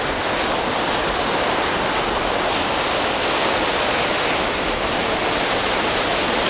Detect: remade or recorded recorded